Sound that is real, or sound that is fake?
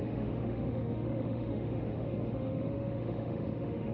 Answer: fake